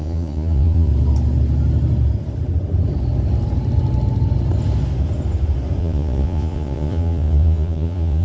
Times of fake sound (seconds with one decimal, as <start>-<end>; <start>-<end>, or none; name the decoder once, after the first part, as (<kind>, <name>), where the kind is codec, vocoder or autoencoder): 0.0-0.9 (vocoder, Vocos); 5.8-8.2